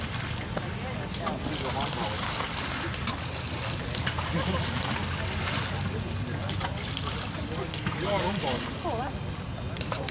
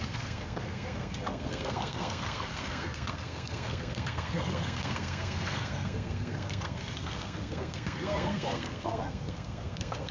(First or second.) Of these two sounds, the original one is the first